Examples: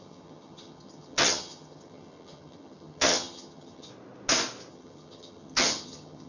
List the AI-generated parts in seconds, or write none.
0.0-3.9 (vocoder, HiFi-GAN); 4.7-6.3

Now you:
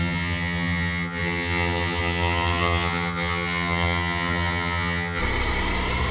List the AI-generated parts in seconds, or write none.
0.0-5.2 (vocoder, HiFi-GAN)

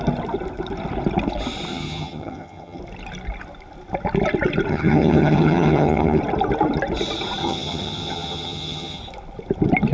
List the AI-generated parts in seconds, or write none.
1.7-2.8 (vocoder, HiFi-GAN); 4.7-6.2; 7.4-9.0

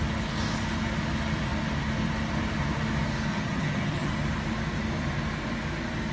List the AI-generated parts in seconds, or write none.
3.3-4.1 (vocoder, HiFi-GAN)

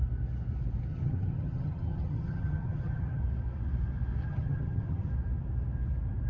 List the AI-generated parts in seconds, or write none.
0.9-3.2 (vocoder, HiFi-GAN); 4.2-5.1